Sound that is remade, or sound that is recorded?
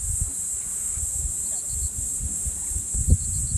remade